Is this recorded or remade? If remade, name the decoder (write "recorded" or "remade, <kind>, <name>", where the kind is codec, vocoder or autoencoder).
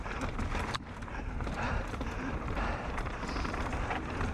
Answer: remade, vocoder, BigVGAN v2